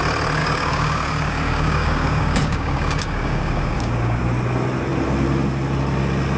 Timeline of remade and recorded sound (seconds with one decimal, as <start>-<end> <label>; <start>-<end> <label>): 0.0-0.4 recorded; 0.4-4.2 remade; 4.2-6.4 recorded